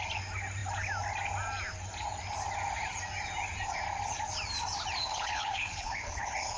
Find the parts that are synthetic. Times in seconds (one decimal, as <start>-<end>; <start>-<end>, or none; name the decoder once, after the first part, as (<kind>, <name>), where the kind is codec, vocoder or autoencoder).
5.0-6.6 (codec, HILCodec)

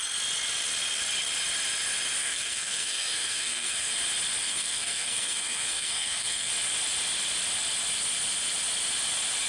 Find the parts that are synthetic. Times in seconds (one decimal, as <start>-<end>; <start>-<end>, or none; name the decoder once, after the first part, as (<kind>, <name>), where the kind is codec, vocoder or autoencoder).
2.2-3.9 (codec, SNAC); 4.4-6.5

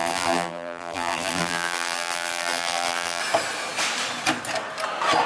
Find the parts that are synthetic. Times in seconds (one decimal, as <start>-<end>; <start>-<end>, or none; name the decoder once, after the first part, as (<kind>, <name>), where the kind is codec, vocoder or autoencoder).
0.0-3.2 (vocoder, BigVGAN v2)

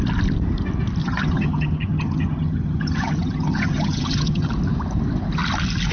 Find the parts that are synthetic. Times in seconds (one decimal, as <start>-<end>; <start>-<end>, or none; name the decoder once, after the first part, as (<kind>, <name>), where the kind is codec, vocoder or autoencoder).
1.0-4.5 (vocoder, HiFi-GAN)

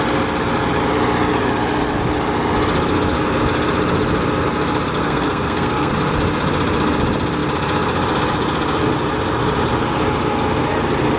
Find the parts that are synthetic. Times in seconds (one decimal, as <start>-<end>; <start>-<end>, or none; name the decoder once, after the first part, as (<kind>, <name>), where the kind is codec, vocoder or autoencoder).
5.0-5.9 (codec, SNAC)

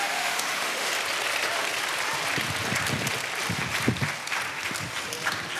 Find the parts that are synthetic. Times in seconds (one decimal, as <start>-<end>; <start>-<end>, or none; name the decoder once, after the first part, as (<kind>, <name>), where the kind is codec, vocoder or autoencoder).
0.0-0.9 (autoencoder, DAC-VAE)